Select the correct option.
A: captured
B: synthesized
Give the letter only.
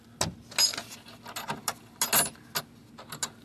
A